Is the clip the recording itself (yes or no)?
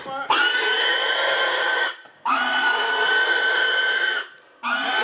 yes